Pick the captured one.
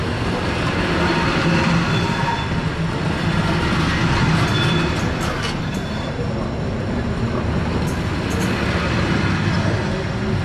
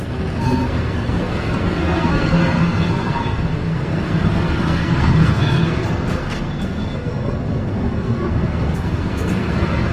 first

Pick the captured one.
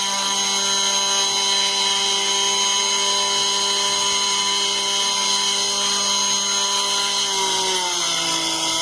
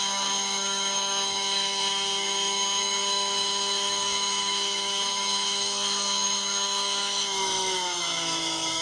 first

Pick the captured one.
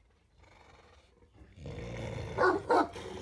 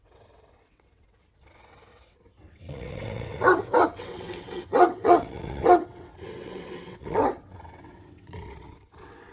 first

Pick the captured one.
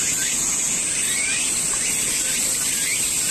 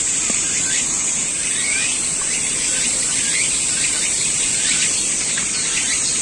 first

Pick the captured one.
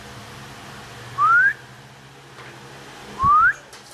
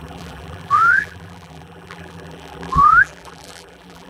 first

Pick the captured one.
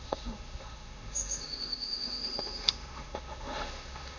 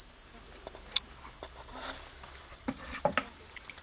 second